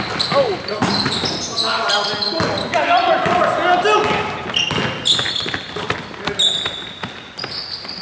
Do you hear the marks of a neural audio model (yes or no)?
no